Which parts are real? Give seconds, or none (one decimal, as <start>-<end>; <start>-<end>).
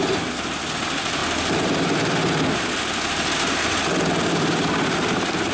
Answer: 0.0-5.5